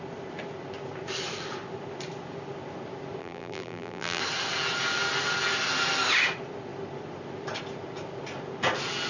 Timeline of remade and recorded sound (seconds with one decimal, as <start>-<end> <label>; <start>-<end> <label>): 0.0-3.2 recorded; 3.2-4.2 remade; 4.2-9.1 recorded

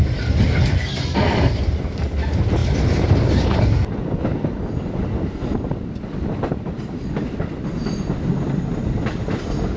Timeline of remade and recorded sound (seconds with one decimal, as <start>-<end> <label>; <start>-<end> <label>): 0.0-2.0 remade; 2.0-2.6 recorded; 2.6-4.1 remade; 4.1-9.8 recorded

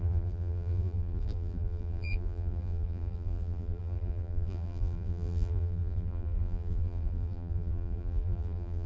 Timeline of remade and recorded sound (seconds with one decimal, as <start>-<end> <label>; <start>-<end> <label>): 0.0-8.9 remade

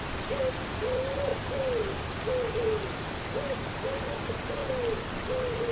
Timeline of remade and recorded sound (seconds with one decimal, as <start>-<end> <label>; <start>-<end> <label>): 0.0-5.7 recorded

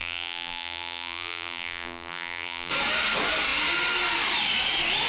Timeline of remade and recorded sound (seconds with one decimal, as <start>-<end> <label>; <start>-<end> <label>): 0.0-2.7 remade; 2.7-5.1 recorded

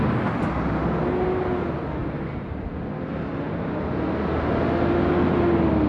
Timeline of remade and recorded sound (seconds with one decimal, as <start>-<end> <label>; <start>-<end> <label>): 0.0-5.9 recorded